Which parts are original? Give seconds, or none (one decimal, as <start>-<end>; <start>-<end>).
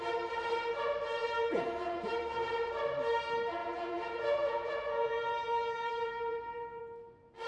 0.0-1.2; 2.2-3.6; 6.8-7.5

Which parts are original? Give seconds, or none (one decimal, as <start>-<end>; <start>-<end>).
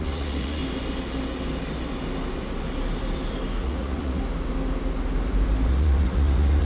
0.6-3.6; 4.2-5.7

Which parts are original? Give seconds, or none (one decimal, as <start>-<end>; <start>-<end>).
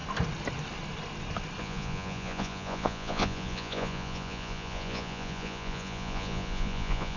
0.0-1.6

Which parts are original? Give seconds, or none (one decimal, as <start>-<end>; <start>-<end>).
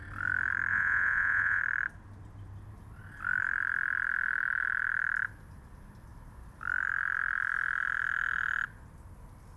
0.0-0.7; 1.6-9.6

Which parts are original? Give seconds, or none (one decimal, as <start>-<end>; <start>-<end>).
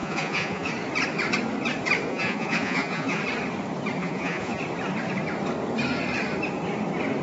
0.7-2.1; 3.2-4.0; 4.6-7.2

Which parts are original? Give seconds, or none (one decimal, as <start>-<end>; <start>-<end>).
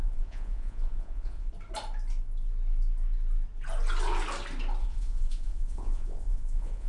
1.5-4.8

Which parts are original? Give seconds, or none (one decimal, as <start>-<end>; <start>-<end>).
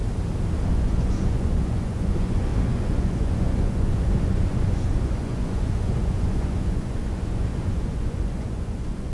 0.0-0.7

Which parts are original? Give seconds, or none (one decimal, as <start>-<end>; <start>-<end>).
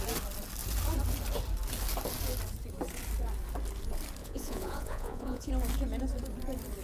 0.0-4.2; 5.5-6.8